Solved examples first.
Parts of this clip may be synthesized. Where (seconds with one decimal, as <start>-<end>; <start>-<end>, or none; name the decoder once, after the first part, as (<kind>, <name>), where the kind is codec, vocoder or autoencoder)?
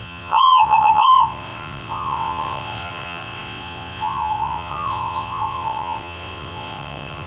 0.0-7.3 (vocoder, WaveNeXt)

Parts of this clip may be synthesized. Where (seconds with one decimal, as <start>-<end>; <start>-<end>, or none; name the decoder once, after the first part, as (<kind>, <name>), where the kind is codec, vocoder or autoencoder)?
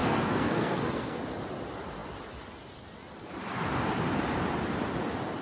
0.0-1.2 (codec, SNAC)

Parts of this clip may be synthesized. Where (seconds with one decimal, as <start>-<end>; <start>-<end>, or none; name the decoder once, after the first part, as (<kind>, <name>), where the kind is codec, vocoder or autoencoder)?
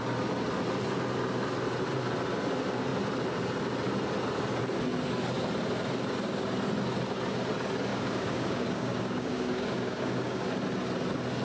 7.9-10.5 (codec, DAC)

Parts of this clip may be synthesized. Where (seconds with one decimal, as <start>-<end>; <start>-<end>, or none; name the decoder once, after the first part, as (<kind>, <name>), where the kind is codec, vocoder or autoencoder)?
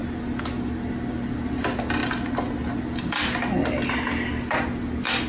none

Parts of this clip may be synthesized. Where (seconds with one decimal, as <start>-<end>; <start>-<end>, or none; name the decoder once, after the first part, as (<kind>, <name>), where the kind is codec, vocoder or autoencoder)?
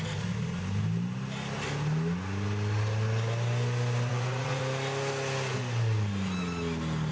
4.1-4.6 (vocoder, Vocos)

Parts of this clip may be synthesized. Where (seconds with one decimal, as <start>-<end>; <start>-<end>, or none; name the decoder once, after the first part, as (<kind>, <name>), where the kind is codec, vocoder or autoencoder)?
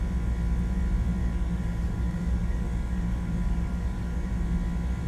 1.2-4.3 (codec, DAC)